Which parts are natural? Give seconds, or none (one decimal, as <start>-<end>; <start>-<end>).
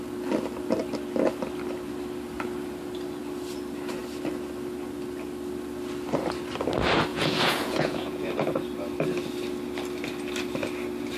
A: 0.0-7.1; 8.3-11.2